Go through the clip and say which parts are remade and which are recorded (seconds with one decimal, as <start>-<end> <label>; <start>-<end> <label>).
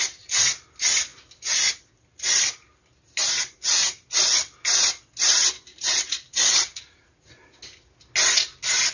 0.0-5.7 recorded; 5.7-7.3 remade; 7.3-8.9 recorded